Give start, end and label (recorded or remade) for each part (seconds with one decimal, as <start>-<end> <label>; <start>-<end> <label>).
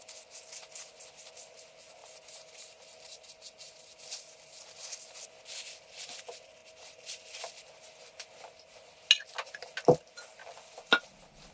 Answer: 0.0-2.0 recorded; 2.0-5.0 remade; 5.0-6.6 recorded; 6.6-7.5 remade; 7.5-10.4 recorded; 10.4-11.1 remade; 11.1-11.5 recorded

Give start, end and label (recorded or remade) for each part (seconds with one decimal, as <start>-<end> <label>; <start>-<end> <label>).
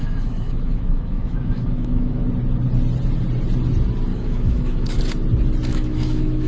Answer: 0.0-2.2 remade; 2.2-4.1 recorded; 4.1-5.0 remade; 5.0-5.7 recorded; 5.7-6.5 remade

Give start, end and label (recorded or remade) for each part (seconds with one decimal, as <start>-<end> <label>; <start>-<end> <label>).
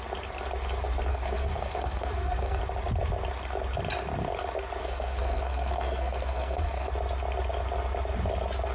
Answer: 0.0-1.1 recorded; 1.1-2.6 remade; 2.6-4.8 recorded; 4.8-6.9 remade; 6.9-8.7 recorded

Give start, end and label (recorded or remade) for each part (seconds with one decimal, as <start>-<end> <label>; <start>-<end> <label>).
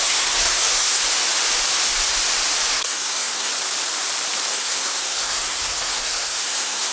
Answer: 0.0-1.0 remade; 1.0-2.7 recorded; 2.7-3.5 remade; 3.5-4.5 recorded; 4.5-6.9 remade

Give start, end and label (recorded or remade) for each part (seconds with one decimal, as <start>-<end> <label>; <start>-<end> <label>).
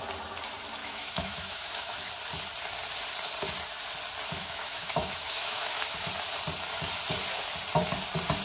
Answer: 0.0-0.8 recorded; 0.8-2.1 remade; 2.1-4.4 recorded; 4.4-6.1 remade; 6.1-8.4 recorded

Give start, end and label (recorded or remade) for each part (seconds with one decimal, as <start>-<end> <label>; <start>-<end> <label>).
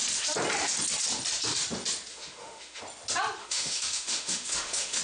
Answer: 0.0-2.1 recorded; 2.1-2.8 remade; 2.8-3.4 recorded; 3.4-5.0 remade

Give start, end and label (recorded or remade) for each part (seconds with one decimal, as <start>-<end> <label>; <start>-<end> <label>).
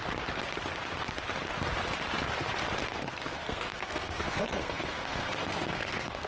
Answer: 0.0-2.9 recorded; 2.9-6.3 remade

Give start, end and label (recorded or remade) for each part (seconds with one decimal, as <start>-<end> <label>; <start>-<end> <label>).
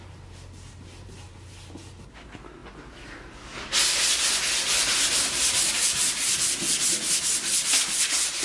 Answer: 0.0-8.4 recorded